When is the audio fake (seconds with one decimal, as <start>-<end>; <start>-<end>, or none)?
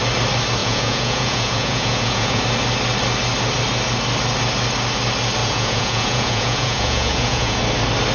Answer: 0.6-2.4; 5.4-7.6